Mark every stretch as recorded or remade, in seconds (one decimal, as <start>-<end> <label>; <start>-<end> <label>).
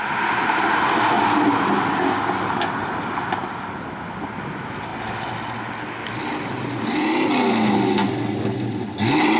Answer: 0.0-9.4 recorded